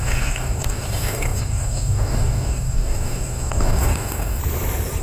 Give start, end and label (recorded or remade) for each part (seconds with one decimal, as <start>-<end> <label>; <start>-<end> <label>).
0.0-4.4 remade; 4.4-5.0 recorded